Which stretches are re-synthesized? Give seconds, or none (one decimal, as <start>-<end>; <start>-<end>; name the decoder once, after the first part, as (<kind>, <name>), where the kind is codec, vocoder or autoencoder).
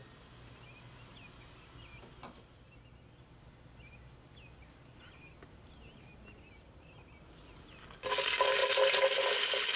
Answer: none